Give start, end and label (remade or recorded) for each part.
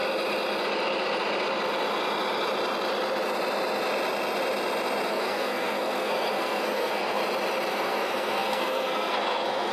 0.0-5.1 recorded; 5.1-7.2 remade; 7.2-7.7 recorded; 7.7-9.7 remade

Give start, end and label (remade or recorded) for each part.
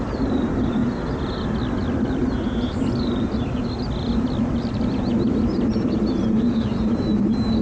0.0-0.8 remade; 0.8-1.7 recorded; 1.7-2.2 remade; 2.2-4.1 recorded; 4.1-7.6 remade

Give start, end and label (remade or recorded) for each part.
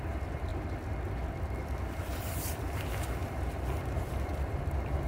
0.0-0.5 remade; 0.5-2.3 recorded; 2.3-5.1 remade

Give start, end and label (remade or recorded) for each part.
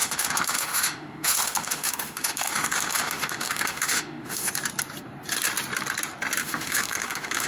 0.0-4.5 remade; 4.5-6.4 recorded; 6.4-7.5 remade